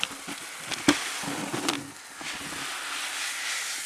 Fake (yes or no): no